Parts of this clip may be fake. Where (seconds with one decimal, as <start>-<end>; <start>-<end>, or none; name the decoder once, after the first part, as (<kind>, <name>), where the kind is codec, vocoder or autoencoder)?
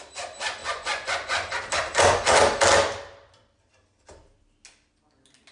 0.6-1.5 (vocoder, Vocos)